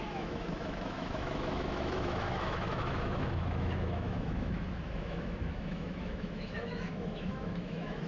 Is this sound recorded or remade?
remade